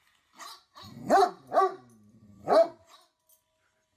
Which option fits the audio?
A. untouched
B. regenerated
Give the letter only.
A